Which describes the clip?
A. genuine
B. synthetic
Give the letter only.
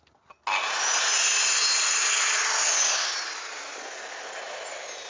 A